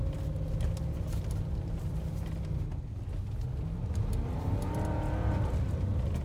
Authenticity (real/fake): real